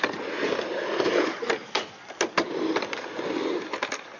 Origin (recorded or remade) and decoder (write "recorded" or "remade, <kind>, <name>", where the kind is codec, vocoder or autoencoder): recorded